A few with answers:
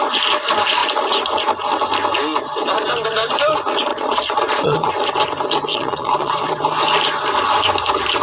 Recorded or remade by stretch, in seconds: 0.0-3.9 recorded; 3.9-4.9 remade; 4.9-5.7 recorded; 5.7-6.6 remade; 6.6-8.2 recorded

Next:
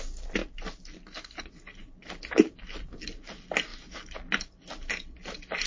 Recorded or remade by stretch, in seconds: 0.0-5.7 recorded

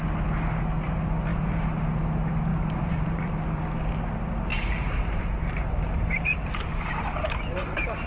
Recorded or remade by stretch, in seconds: 0.0-1.3 recorded; 1.3-1.8 remade; 1.8-2.5 recorded; 2.5-3.4 remade; 3.4-4.5 recorded; 4.5-8.1 remade

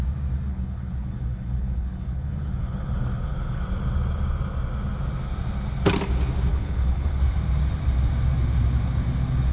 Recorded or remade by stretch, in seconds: 0.0-0.5 recorded; 0.5-3.6 remade; 3.6-6.5 recorded; 6.5-7.2 remade; 7.2-9.5 recorded

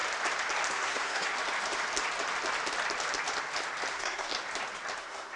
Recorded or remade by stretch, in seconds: 0.0-0.7 recorded; 0.7-1.3 remade; 1.3-3.9 recorded; 3.9-4.3 remade; 4.3-5.0 recorded; 5.0-5.4 remade